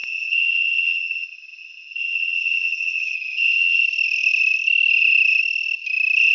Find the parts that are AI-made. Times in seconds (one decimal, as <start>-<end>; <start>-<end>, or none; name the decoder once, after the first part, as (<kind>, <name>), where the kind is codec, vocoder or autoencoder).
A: 0.0-3.8 (vocoder, HiFi-GAN)